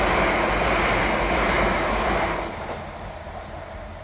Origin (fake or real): real